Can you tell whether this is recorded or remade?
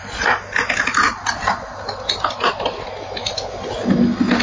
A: recorded